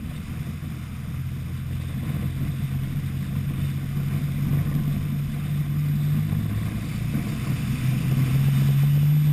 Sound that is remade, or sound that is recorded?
recorded